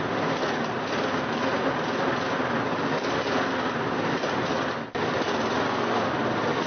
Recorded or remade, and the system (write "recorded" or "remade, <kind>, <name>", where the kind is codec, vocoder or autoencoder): recorded